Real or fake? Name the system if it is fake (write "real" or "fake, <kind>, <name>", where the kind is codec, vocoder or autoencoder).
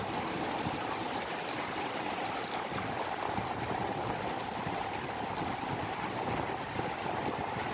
real